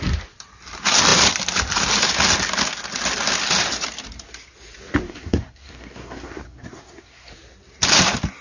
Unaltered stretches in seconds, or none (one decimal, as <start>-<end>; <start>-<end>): 0.0-5.0; 7.3-8.4